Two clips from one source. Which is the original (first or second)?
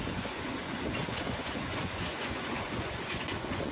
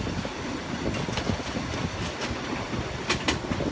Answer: second